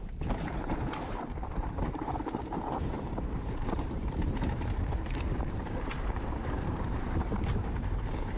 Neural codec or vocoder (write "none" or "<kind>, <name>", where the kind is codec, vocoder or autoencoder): vocoder, BigVGAN v2